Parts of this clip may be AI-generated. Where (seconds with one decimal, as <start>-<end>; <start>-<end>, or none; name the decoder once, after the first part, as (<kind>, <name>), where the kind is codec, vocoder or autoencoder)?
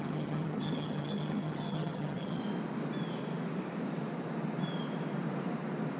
0.0-2.4 (vocoder, HiFi-GAN)